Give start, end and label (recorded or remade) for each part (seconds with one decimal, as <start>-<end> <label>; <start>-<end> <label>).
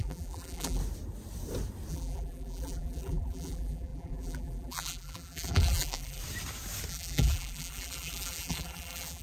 0.0-0.8 remade; 0.8-1.9 recorded; 1.9-6.2 remade; 6.2-6.9 recorded; 6.9-9.2 remade